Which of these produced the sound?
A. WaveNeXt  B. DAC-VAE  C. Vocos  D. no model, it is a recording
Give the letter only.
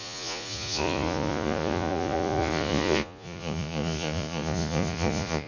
C